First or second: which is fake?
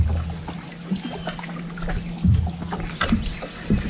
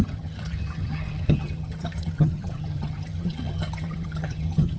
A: second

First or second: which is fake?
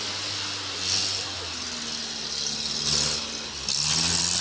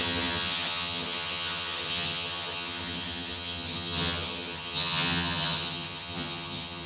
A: second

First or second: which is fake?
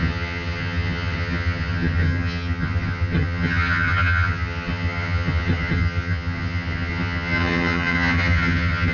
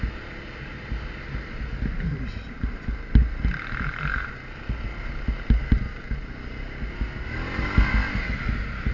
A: first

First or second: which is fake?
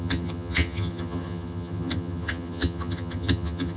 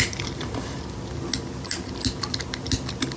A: first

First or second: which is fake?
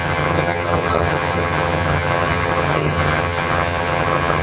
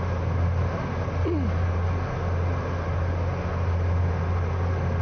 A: first